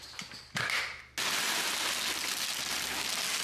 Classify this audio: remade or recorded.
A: recorded